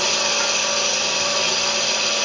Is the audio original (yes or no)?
yes